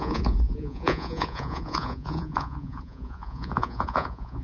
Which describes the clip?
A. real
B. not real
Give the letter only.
B